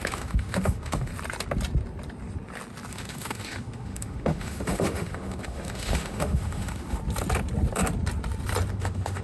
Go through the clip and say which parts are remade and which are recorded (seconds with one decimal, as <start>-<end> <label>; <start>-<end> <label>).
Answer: 0.0-1.1 remade; 1.1-2.9 recorded; 2.9-7.0 remade; 7.0-8.7 recorded; 8.7-9.2 remade